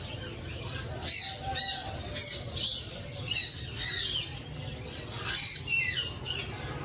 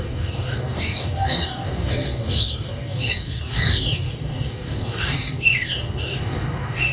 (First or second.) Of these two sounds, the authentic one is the first